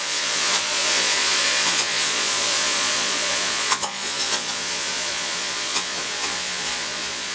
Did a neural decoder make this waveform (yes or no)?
yes